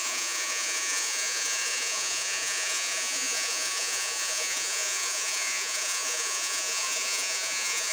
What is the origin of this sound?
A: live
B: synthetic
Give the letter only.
B